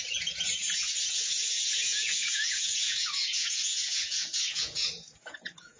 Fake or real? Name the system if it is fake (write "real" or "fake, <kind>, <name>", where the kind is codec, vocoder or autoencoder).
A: fake, vocoder, Vocos